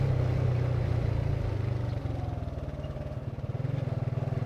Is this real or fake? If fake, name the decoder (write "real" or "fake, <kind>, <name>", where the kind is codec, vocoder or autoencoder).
real